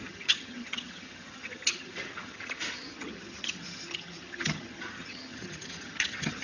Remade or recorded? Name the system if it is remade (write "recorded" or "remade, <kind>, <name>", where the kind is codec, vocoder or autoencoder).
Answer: remade, vocoder, HiFi-GAN